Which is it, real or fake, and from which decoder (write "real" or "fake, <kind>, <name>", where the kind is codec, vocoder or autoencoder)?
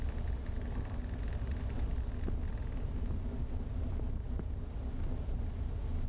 real